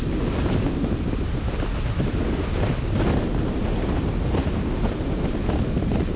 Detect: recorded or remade recorded